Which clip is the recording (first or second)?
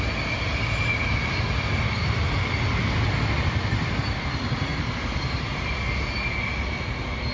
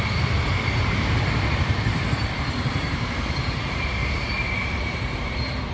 first